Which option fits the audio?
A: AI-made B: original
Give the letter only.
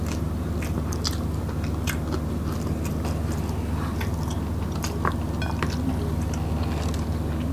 B